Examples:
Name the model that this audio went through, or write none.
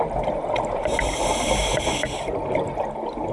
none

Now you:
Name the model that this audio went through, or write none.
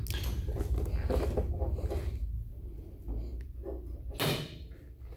none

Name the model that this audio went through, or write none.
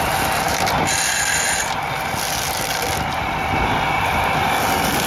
none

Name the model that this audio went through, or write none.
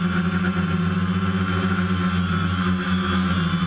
none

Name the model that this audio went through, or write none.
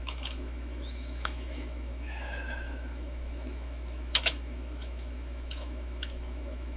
autoencoder, DAC-VAE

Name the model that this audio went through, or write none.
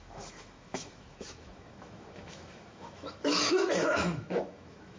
autoencoder, DAC-VAE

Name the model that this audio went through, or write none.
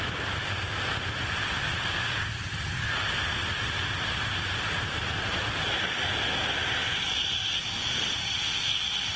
none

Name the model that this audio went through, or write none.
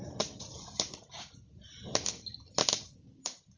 none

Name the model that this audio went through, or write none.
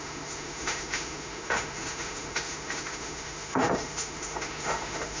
autoencoder, DAC-VAE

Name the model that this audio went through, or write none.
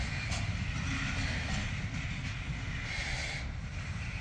none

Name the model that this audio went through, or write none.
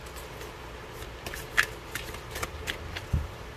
none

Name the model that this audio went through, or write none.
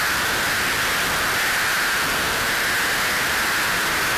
none